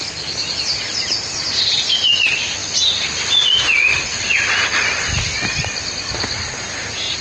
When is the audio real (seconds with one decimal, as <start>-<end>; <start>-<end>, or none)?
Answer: 0.0-7.2